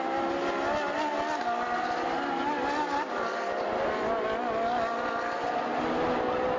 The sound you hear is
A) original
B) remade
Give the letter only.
A